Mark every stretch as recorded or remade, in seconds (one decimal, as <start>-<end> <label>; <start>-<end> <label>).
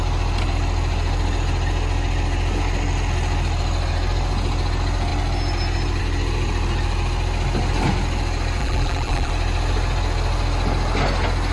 0.0-8.6 recorded; 8.6-9.3 remade; 9.3-11.5 recorded